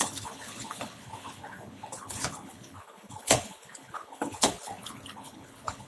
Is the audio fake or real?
fake